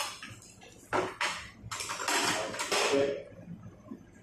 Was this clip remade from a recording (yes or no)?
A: no